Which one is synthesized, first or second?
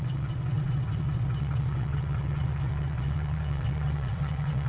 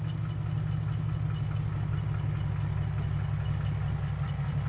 first